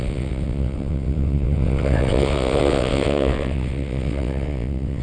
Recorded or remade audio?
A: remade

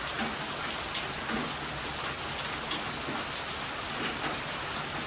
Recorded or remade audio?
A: recorded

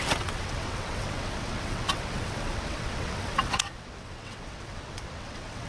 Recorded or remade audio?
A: remade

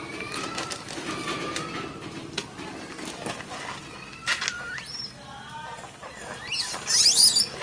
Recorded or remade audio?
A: recorded